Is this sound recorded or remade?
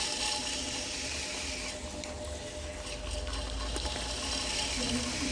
recorded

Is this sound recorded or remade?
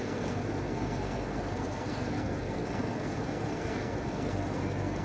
remade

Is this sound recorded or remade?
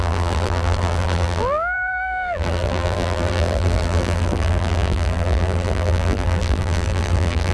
remade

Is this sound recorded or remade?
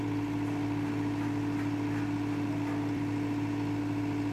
recorded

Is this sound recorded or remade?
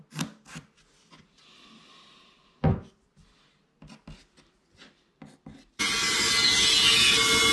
recorded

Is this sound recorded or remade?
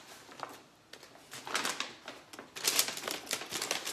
recorded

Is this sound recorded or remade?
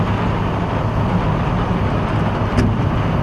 recorded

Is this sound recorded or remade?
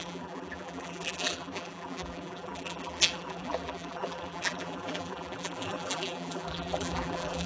remade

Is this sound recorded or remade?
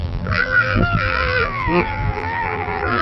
remade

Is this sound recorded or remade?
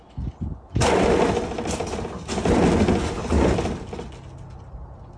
recorded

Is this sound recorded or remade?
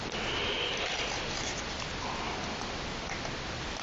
recorded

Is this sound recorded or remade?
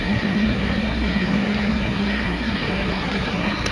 remade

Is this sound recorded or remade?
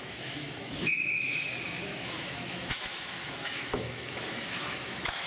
remade